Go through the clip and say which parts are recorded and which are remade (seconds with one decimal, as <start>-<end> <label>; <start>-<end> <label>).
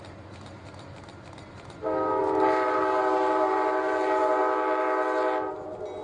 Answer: 0.0-6.0 recorded